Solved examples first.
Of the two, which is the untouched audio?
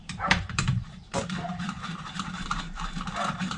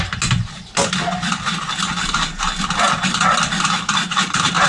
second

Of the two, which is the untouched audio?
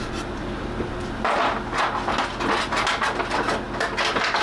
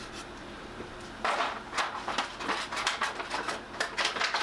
first